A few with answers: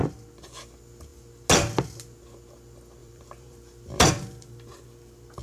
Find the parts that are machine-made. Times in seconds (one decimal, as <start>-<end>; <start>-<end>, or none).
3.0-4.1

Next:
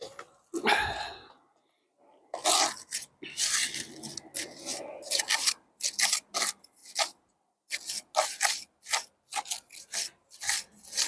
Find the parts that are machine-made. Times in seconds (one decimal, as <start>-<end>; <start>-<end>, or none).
none

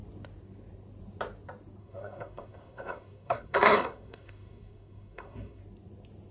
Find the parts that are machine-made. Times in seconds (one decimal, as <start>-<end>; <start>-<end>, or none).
1.8-5.6

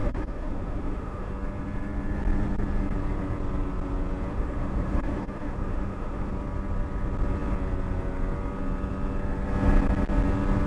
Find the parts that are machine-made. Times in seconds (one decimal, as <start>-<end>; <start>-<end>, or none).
0.0-1.3; 4.3-6.3

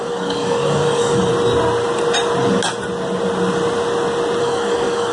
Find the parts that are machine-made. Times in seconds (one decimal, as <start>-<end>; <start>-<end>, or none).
0.0-1.3; 4.4-5.1

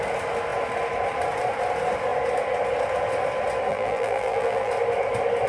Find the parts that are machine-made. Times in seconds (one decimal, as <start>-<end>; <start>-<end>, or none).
3.7-4.7

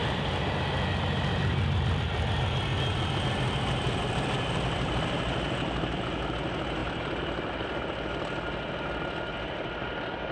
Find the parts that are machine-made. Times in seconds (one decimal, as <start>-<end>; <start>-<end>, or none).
0.9-6.0; 6.8-7.8